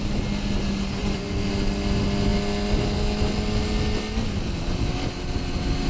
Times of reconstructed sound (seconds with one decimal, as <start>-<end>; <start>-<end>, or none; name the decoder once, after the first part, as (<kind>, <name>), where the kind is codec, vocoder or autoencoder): 1.0-1.5 (vocoder, Vocos)